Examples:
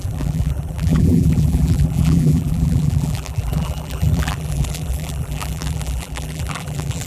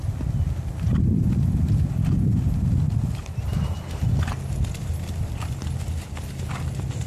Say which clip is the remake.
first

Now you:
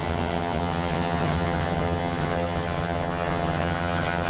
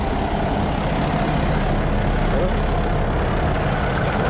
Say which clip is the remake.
first